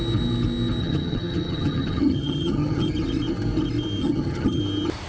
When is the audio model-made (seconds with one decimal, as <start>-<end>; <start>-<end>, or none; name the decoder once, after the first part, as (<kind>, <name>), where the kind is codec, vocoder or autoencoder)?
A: 0.8-2.9 (vocoder, HiFi-GAN); 4.0-4.6